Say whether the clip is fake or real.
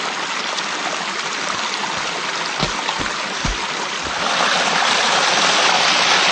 real